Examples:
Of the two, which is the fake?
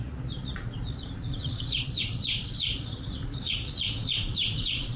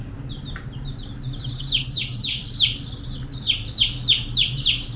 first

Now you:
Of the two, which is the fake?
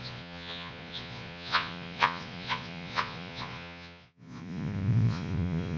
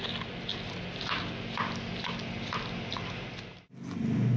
first